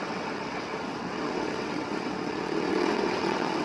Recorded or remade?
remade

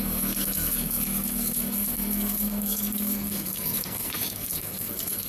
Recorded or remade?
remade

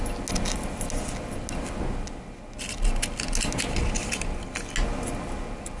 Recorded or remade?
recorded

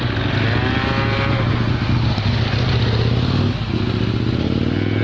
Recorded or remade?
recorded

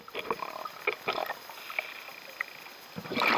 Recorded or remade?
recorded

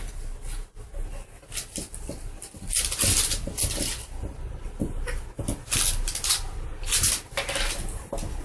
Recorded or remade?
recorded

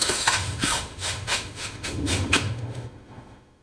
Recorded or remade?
remade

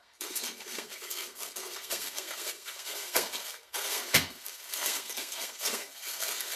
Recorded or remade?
remade